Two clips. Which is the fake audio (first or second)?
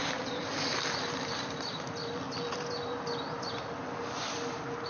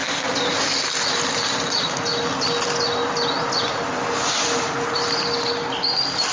first